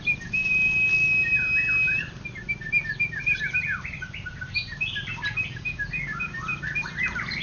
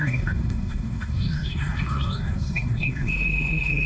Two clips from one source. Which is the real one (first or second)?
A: first